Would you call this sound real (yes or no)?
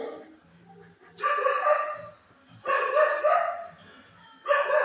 yes